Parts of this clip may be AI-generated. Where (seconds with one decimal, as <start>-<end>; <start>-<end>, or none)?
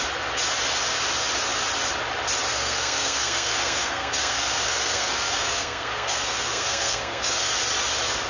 2.5-7.5